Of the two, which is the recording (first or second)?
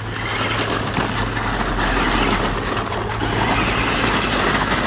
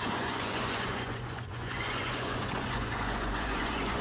first